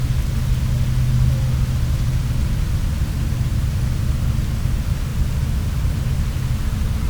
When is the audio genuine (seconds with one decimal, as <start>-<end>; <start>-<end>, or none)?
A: 0.0-7.1